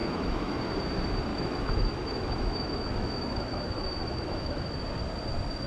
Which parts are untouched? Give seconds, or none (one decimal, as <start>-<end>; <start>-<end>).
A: 0.6-1.3; 4.7-5.7